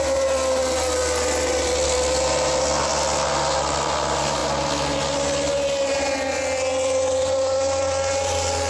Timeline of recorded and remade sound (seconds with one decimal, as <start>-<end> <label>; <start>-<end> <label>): 0.0-8.7 recorded